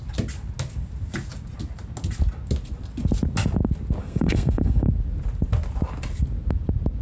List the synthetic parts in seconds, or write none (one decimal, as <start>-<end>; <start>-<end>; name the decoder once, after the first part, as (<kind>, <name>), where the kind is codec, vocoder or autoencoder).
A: 4.0-4.9 (codec, SNAC)